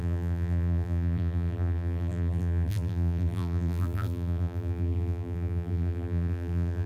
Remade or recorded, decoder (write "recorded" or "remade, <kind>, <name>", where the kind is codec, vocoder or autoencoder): remade, vocoder, BigVGAN v2